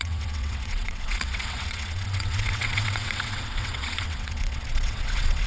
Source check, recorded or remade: remade